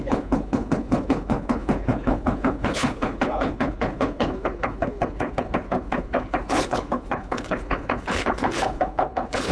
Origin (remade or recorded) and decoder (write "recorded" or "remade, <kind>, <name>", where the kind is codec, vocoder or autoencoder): remade, codec, HILCodec